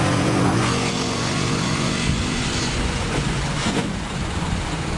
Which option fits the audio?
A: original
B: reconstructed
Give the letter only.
B